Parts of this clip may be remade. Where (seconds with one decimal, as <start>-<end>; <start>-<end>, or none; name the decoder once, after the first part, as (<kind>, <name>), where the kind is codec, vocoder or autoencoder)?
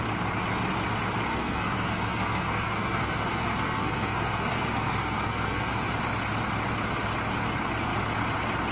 1.3-5.7 (codec, SNAC)